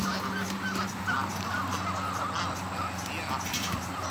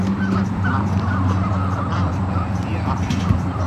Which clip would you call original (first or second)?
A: first